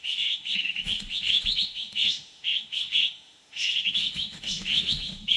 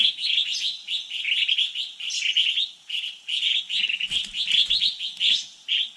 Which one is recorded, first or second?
second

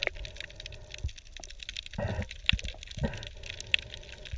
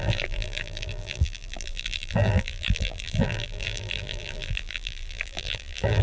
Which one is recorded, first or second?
first